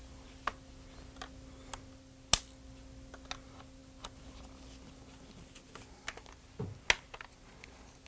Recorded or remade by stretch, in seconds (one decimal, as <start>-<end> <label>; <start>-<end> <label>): 0.0-8.1 recorded